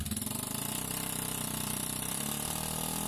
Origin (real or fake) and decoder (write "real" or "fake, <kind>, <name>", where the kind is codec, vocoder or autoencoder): fake, vocoder, BigVGAN v2